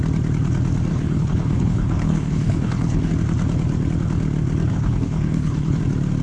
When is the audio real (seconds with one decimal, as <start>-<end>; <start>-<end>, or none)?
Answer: 0.0-0.9; 3.1-4.7; 5.8-6.2